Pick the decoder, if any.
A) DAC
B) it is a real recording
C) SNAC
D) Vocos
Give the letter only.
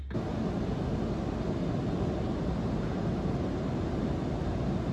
B